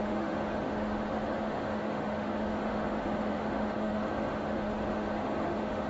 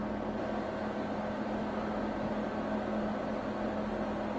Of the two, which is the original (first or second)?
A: second